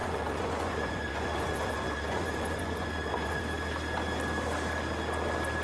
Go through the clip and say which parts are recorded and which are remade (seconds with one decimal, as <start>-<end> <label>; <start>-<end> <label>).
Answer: 0.0-3.4 remade; 3.4-5.6 recorded